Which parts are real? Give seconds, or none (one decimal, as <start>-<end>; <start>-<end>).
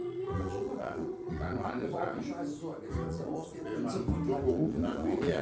2.2-3.1; 3.7-4.5